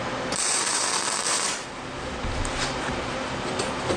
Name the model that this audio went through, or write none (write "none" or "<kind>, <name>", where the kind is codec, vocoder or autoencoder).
vocoder, BigVGAN v2